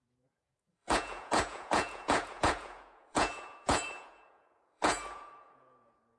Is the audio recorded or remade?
remade